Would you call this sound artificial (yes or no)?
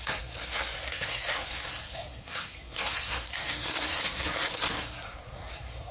yes